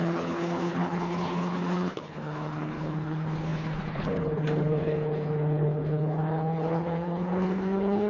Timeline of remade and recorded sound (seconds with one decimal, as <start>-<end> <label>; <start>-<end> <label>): 0.0-8.1 remade